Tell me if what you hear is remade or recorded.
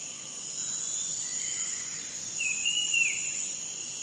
remade